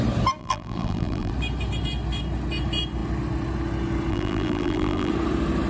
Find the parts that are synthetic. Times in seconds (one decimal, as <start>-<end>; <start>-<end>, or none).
0.4-1.3; 4.1-5.1

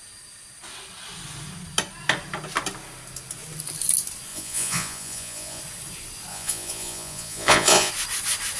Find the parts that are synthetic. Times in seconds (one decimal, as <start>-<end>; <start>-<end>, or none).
4.3-5.6; 6.3-7.9

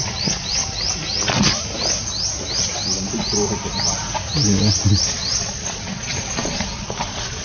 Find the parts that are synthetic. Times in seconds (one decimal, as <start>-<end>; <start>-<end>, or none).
0.0-0.6; 5.0-7.4